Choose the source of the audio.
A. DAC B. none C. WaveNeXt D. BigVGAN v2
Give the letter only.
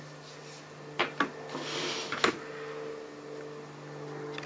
B